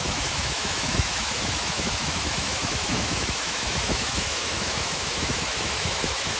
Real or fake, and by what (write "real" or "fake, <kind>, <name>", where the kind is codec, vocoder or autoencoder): fake, autoencoder, DAC-VAE